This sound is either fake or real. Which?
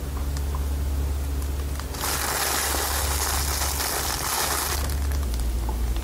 real